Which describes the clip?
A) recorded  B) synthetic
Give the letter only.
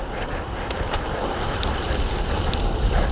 B